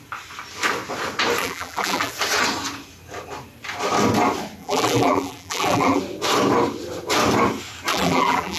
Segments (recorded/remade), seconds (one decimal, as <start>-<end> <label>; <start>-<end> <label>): 0.0-1.4 recorded; 1.4-2.1 remade; 2.1-4.6 recorded; 4.6-6.0 remade; 6.0-7.9 recorded; 7.9-8.6 remade